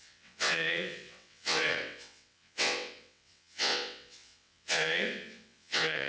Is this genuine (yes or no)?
no